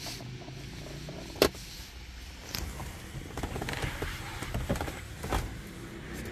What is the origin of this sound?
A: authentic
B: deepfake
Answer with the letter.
A